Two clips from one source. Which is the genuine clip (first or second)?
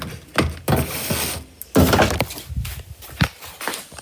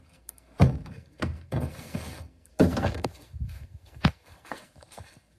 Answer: first